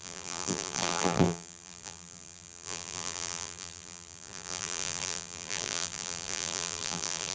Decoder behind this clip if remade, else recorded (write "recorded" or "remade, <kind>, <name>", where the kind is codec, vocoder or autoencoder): remade, vocoder, BigVGAN v2